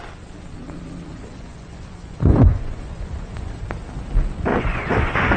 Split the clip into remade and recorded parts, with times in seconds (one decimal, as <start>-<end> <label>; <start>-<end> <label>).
0.0-1.1 recorded; 1.1-3.6 remade; 3.6-4.5 recorded; 4.5-5.4 remade